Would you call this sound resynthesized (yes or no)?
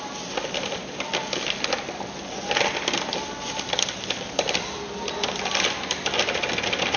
no